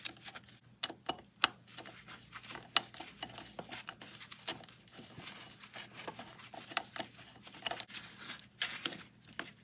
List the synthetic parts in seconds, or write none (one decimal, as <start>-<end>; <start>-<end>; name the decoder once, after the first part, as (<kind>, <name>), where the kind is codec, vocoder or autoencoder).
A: none